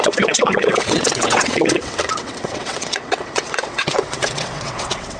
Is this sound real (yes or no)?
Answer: no